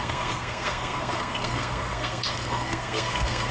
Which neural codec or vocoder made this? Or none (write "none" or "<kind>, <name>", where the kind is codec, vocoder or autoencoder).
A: codec, SNAC